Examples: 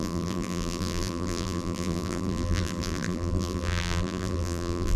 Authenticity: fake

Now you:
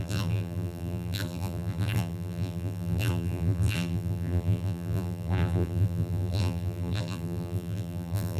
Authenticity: fake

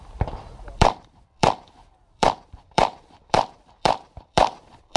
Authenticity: fake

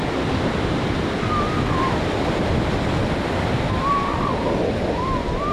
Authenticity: fake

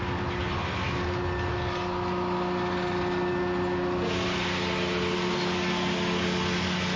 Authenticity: real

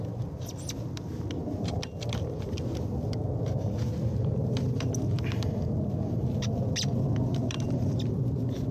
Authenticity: real